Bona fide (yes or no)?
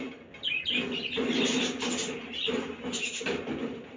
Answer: yes